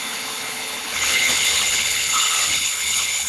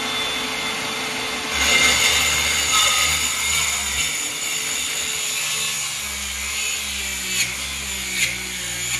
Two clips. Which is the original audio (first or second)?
second